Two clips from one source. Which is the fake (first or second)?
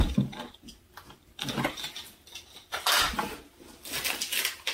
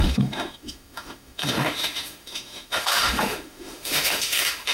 second